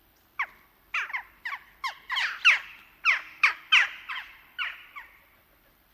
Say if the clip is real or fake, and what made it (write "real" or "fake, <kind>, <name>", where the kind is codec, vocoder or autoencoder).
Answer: fake, vocoder, BigVGAN v2